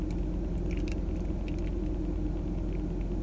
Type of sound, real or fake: real